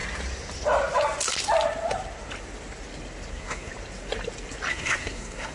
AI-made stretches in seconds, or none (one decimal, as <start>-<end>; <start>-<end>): 3.3-3.7; 4.7-5.5